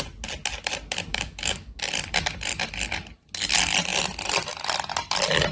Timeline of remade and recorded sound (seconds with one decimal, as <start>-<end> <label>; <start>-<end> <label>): 0.0-1.1 recorded; 1.1-1.8 remade; 1.8-5.5 recorded